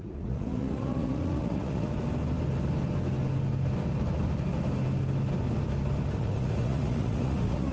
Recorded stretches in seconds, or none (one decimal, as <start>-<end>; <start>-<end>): 1.9-6.2